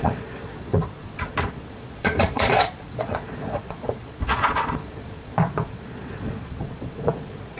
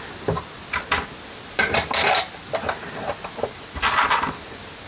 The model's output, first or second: first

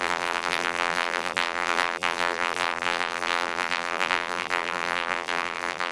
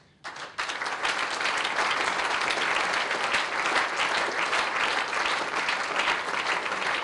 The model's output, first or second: first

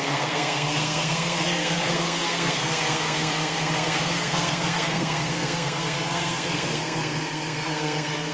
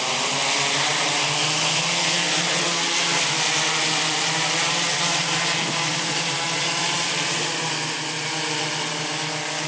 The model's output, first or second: first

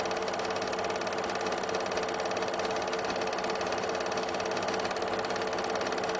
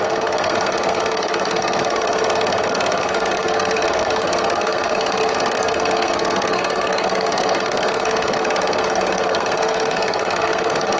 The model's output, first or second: second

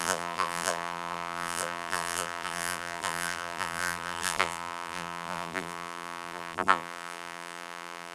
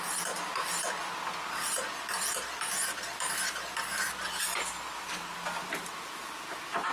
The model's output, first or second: first